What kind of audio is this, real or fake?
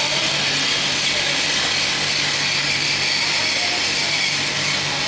real